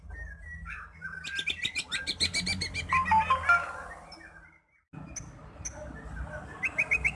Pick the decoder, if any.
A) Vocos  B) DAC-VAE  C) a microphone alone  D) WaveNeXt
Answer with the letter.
C